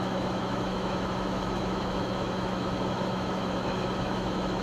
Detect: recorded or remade remade